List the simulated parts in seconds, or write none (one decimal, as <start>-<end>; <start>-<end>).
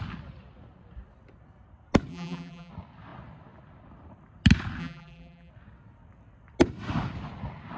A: 2.1-2.7; 4.8-5.5